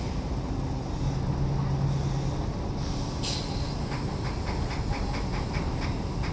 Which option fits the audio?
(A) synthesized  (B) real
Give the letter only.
B